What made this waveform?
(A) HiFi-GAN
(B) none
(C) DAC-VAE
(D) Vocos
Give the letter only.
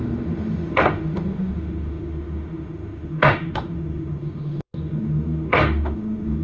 C